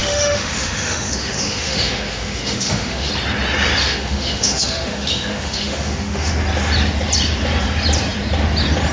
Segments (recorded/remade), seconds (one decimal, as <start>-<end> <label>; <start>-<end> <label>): 0.0-3.1 remade; 3.1-3.8 recorded; 3.8-6.3 remade; 6.3-8.9 recorded